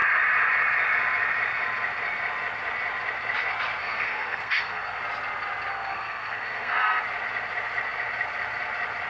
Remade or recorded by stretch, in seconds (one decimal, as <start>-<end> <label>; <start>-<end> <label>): 0.0-3.8 recorded; 3.8-5.0 remade; 5.0-5.7 recorded; 5.7-7.0 remade; 7.0-9.1 recorded